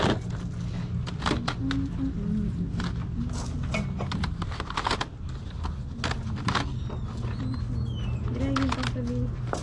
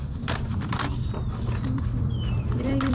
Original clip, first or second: first